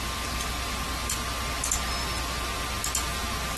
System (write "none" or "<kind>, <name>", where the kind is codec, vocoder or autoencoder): none